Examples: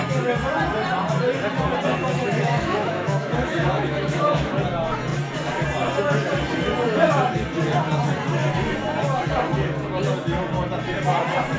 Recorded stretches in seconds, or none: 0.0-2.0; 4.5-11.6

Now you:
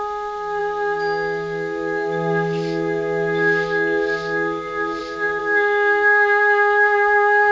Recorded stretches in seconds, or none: 0.0-5.4